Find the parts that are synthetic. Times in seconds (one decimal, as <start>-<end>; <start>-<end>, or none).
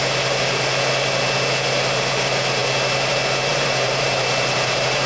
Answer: 3.5-5.1